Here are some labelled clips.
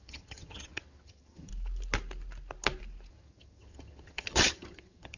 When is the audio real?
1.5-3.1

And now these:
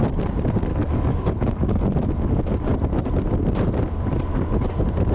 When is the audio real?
0.0-0.7; 1.8-5.1

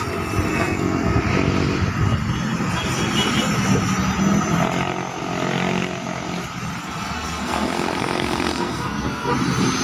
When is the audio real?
0.0-0.5; 1.2-6.8; 9.3-9.8

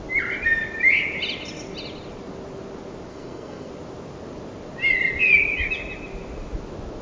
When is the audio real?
0.0-3.1; 3.7-7.0

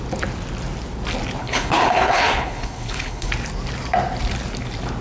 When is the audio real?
0.0-1.4; 3.3-5.0